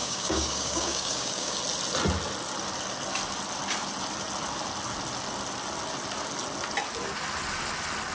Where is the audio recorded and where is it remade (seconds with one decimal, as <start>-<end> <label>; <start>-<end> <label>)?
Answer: 0.0-1.6 remade; 1.6-8.1 recorded